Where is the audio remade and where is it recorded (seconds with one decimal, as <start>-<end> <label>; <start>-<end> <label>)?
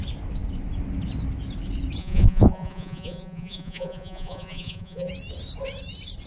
0.0-2.0 recorded; 2.0-5.1 remade; 5.1-6.3 recorded